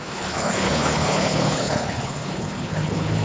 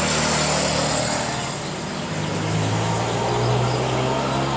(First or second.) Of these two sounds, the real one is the second